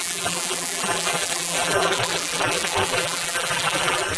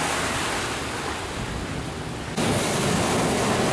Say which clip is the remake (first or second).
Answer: first